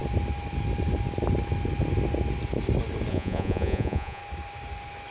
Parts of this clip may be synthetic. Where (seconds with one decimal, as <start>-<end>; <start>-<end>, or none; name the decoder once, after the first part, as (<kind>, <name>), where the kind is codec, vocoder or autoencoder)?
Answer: 3.1-4.2 (vocoder, Vocos)